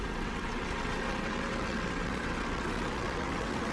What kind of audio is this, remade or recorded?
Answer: remade